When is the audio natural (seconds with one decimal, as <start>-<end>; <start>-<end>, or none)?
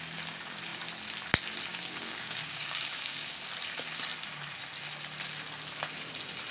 0.0-1.7; 3.4-6.5